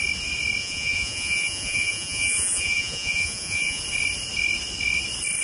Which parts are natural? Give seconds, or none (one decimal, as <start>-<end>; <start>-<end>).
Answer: 0.0-0.6; 3.8-5.4

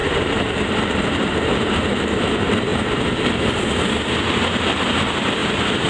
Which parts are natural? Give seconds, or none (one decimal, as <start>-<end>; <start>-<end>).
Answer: 2.1-2.7; 3.6-5.4

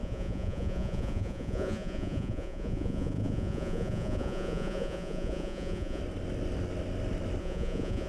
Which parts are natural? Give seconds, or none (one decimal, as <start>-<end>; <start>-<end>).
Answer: 6.0-7.4

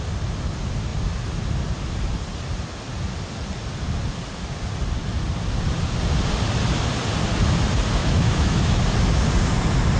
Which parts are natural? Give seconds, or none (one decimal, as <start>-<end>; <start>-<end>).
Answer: 0.0-8.0; 8.8-10.0